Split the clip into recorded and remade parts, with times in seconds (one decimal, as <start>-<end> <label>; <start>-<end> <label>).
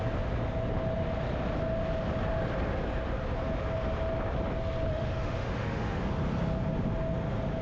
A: 0.0-4.9 recorded; 4.9-6.0 remade; 6.0-7.6 recorded